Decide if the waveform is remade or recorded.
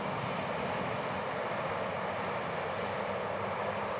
recorded